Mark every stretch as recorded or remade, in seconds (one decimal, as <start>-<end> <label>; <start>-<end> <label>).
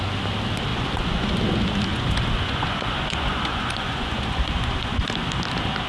0.0-0.7 recorded; 0.7-1.3 remade; 1.3-1.9 recorded; 1.9-5.1 remade; 5.1-5.9 recorded